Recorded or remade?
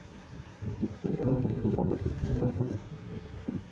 remade